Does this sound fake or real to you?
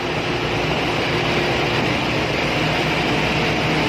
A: real